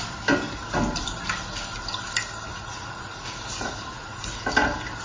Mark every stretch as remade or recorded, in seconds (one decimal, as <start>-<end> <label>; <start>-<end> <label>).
0.0-2.5 recorded; 2.5-4.4 remade; 4.4-5.0 recorded